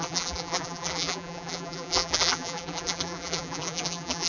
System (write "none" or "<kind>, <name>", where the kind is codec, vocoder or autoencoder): vocoder, BigVGAN v2